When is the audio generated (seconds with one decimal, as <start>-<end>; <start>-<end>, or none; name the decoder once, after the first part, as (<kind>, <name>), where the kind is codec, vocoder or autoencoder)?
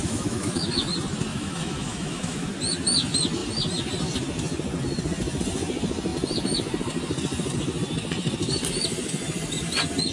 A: 0.0-0.7 (autoencoder, DAC-VAE); 1.3-2.5